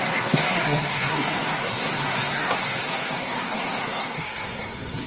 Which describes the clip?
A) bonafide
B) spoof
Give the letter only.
B